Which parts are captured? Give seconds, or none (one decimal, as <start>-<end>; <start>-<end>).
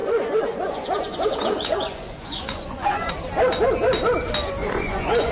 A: 3.1-4.6